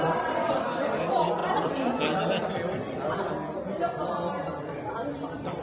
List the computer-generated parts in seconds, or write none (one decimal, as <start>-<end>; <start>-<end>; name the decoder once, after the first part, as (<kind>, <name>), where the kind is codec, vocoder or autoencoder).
none